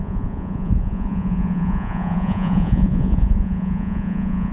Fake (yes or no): yes